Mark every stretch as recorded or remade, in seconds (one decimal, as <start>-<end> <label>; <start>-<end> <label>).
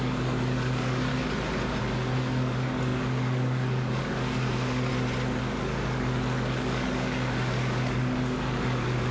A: 0.0-1.1 remade; 1.1-1.8 recorded; 1.8-4.9 remade; 4.9-5.4 recorded; 5.4-9.1 remade